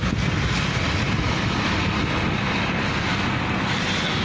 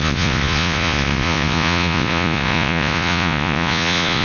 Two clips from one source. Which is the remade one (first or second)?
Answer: second